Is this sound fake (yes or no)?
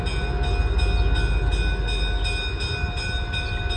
no